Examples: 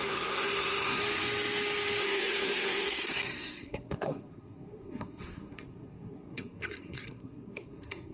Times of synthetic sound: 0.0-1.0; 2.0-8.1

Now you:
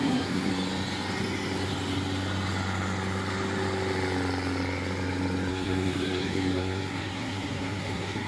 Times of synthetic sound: 0.0-0.5; 5.5-8.3

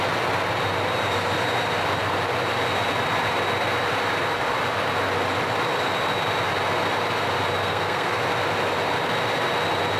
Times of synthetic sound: 7.6-8.2

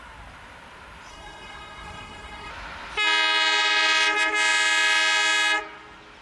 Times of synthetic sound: 1.1-2.5

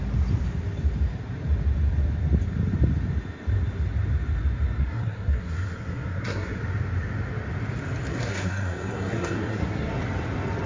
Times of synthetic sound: 4.8-6.6; 8.1-9.9

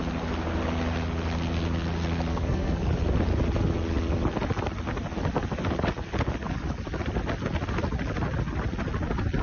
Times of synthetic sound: 2.3-2.8